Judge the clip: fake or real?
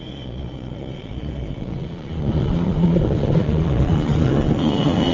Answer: fake